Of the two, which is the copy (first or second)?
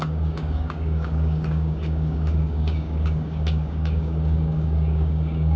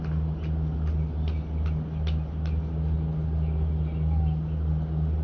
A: first